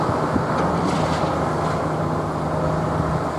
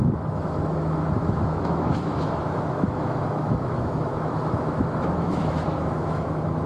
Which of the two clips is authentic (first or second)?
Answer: first